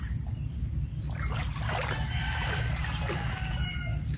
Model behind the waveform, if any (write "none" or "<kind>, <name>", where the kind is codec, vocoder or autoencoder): none